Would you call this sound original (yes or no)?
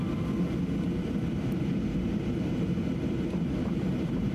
no